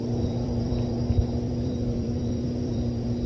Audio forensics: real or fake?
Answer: fake